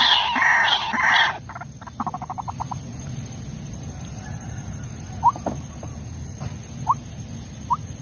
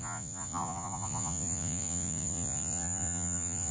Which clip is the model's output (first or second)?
second